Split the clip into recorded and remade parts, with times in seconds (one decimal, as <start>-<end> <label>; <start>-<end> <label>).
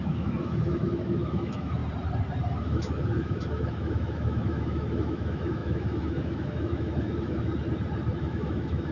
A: 0.0-1.8 remade; 1.8-2.6 recorded; 2.6-7.5 remade; 7.5-8.2 recorded; 8.2-8.9 remade